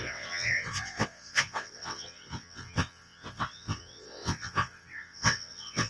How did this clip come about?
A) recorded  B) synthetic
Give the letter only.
B